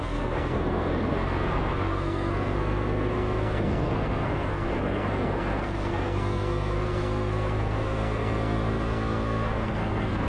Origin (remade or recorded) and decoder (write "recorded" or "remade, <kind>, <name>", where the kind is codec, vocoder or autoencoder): remade, codec, SNAC